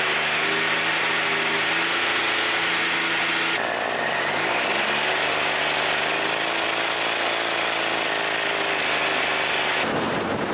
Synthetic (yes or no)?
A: no